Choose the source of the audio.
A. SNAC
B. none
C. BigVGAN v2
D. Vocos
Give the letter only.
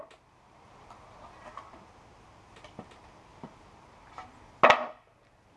B